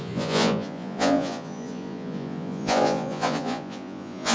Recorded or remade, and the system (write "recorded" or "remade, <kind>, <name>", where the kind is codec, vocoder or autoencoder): remade, vocoder, Vocos